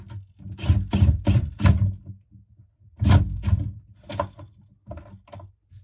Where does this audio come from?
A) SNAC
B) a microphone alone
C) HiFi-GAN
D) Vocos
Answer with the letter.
B